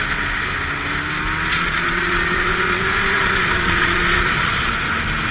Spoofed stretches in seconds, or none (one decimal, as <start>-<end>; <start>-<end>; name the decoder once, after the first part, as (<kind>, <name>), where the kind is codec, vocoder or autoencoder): 1.5-4.7 (vocoder, Vocos)